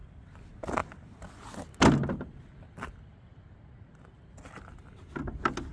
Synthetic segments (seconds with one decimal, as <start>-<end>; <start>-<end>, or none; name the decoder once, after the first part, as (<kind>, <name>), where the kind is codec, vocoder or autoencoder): none